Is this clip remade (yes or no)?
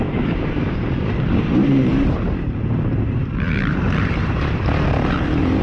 yes